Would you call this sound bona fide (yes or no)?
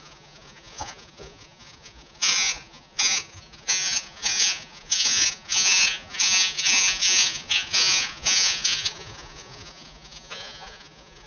no